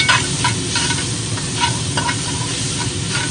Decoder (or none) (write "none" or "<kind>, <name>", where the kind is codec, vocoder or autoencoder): none